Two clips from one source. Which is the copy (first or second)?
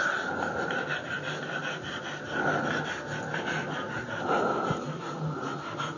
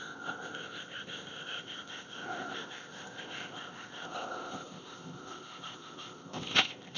second